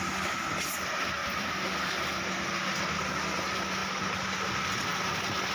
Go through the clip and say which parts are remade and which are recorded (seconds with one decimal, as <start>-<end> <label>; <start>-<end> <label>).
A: 0.0-5.5 recorded